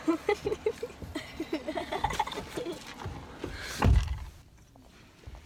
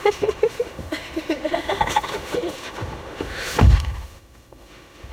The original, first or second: first